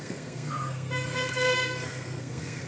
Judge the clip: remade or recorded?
remade